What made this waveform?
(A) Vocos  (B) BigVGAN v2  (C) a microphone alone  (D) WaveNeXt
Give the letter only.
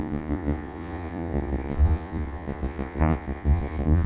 A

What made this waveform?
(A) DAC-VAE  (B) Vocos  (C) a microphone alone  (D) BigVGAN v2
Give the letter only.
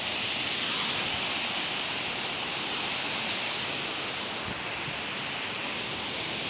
C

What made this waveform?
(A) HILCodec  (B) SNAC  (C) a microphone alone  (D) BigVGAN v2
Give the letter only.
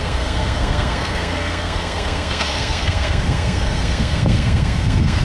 B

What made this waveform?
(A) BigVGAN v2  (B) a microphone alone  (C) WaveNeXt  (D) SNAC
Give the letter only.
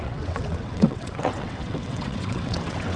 C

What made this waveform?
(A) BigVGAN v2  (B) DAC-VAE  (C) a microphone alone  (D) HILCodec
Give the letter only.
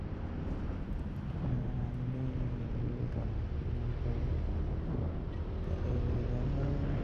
C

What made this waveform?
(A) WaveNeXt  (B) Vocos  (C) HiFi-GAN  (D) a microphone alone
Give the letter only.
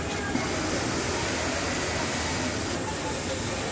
D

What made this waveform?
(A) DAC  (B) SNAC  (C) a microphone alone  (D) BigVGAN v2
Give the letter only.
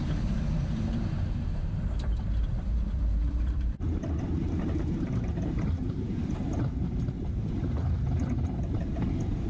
D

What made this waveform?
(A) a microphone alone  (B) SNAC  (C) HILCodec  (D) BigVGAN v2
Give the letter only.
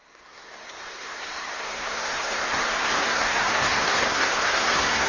B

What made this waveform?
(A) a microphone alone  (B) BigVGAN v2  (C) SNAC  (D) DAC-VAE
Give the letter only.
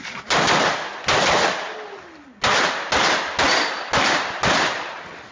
A